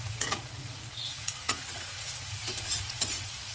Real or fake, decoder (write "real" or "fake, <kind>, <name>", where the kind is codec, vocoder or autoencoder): fake, vocoder, Vocos